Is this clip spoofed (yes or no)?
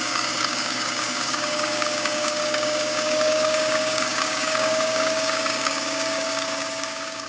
yes